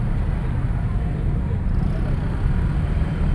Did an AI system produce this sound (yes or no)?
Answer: no